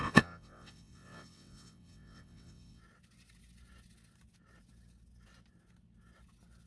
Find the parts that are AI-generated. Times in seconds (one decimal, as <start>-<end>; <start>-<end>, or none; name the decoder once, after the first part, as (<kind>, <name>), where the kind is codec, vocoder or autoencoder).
0.0-2.8 (vocoder, WaveNeXt)